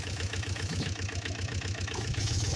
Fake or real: fake